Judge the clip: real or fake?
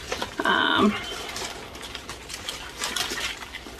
real